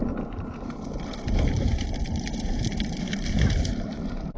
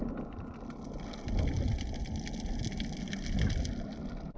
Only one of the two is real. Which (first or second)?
second